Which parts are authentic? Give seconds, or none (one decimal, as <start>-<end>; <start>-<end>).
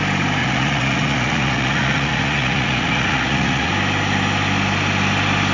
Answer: 0.0-0.4; 3.7-5.5